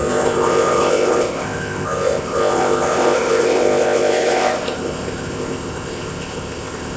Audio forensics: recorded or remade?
remade